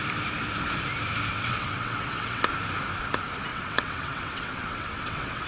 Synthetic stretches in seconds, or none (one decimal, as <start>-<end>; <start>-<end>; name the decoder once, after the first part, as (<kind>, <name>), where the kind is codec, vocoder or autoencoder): 1.3-2.4 (vocoder, WaveNeXt); 3.5-5.5

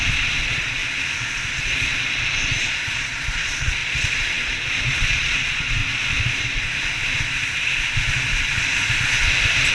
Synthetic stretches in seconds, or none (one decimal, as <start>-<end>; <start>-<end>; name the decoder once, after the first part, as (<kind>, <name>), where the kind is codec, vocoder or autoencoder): 0.0-0.8 (vocoder, Vocos); 1.5-1.9; 2.6-5.8

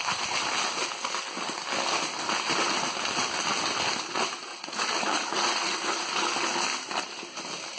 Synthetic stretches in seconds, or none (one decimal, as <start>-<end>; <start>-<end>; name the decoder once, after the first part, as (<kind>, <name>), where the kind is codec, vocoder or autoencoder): 4.5-6.0 (vocoder, Vocos)

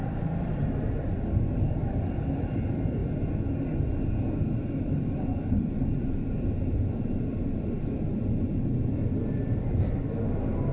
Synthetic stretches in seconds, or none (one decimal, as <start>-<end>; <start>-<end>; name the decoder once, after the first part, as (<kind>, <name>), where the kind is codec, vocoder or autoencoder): 0.0-3.0 (vocoder, BigVGAN v2); 4.3-10.7

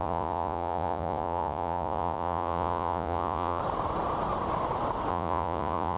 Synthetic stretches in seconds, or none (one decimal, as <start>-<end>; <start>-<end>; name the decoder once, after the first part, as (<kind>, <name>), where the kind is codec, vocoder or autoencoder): 0.0-3.6 (vocoder, Vocos); 5.1-6.0

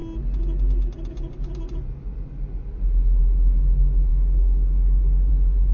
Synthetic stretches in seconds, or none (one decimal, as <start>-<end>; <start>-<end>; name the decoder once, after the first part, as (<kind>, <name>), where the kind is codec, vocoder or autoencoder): 4.1-5.3 (codec, DAC)